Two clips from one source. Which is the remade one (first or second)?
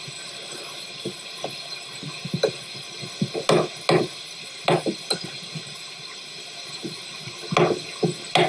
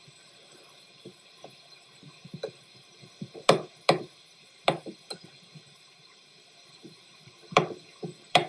second